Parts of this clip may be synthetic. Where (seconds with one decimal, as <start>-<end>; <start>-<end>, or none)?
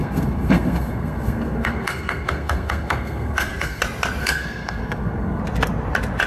0.0-3.8; 4.2-5.4